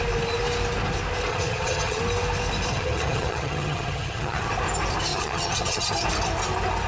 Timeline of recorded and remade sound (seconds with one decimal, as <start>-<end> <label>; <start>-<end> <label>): 0.0-1.3 recorded; 1.3-2.0 remade; 2.0-2.7 recorded; 2.7-4.5 remade; 4.5-5.1 recorded; 5.1-5.9 remade; 5.9-6.9 recorded